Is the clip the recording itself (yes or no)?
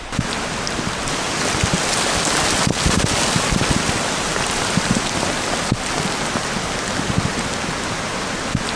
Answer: yes